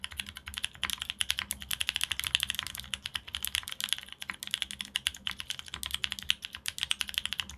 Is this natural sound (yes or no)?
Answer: yes